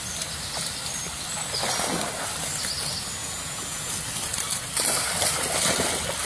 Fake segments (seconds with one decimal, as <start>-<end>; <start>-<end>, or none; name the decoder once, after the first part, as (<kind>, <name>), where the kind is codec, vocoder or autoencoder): 3.2-3.9 (vocoder, Vocos)